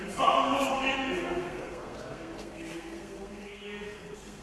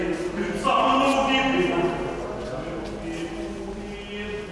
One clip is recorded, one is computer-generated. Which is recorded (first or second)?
second